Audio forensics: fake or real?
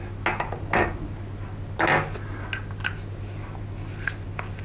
real